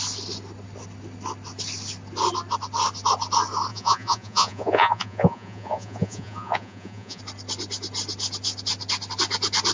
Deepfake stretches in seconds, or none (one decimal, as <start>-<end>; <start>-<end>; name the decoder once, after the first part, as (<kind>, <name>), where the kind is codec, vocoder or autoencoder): 3.7-7.2 (vocoder, Vocos)